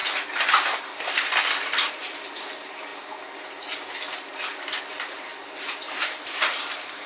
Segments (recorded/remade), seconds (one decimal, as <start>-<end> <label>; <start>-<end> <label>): 0.0-2.9 remade; 2.9-4.8 recorded; 4.8-5.3 remade; 5.3-5.8 recorded; 5.8-7.1 remade

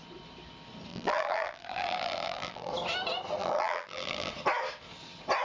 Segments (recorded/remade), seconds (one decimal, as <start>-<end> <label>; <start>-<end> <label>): 0.0-0.9 recorded; 0.9-2.7 remade; 2.7-3.4 recorded; 3.4-4.3 remade; 4.3-5.4 recorded

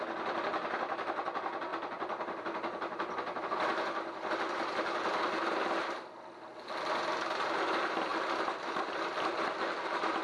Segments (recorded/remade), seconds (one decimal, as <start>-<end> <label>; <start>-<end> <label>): 0.0-8.1 recorded; 8.1-10.2 remade

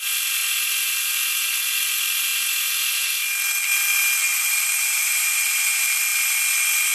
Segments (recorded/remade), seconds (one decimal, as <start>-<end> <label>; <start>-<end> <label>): 0.0-4.3 recorded; 4.3-5.4 remade; 5.4-6.9 recorded